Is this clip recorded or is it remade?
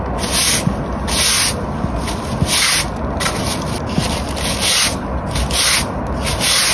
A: recorded